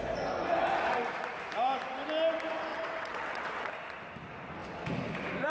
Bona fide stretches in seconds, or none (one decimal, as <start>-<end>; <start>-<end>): 0.0-2.7; 3.7-5.5